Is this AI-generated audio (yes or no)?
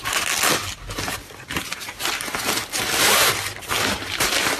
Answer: no